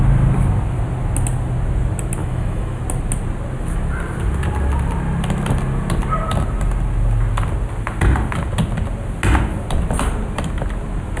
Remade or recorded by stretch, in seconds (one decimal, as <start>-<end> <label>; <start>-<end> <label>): 0.0-2.2 recorded; 2.2-2.8 remade; 2.8-11.2 recorded